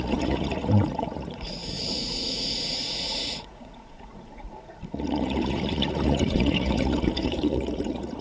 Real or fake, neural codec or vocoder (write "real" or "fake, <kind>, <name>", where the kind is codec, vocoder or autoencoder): fake, vocoder, Vocos